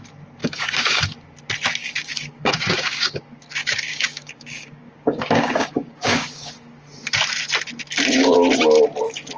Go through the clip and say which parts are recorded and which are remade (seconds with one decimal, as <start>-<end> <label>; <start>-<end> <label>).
0.0-0.4 recorded; 0.4-1.0 remade; 1.0-1.8 recorded; 1.8-3.2 remade; 3.2-3.6 recorded; 3.6-6.5 remade; 6.5-9.4 recorded